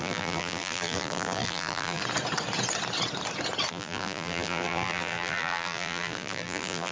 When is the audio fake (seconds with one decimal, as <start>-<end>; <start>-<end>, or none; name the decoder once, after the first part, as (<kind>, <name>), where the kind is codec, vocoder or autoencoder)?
0.0-2.0 (vocoder, BigVGAN v2); 3.7-6.9